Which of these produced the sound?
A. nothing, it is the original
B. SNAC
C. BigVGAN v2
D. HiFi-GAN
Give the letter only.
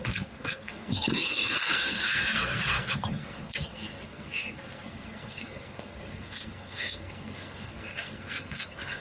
B